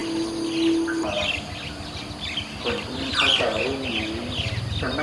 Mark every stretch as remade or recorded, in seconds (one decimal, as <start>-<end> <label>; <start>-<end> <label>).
0.0-5.0 recorded